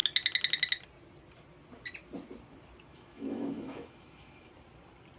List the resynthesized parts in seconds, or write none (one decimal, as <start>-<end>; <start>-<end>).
2.9-4.5